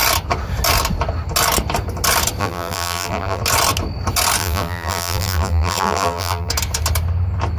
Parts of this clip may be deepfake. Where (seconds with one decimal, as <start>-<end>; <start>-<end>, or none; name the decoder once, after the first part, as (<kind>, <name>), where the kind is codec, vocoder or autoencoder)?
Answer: 2.4-3.4 (vocoder, BigVGAN v2); 4.4-6.5